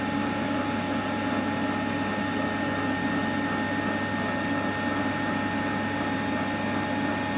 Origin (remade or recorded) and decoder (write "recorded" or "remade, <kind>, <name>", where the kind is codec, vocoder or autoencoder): recorded